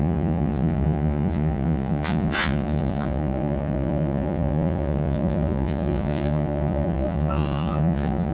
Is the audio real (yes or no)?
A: no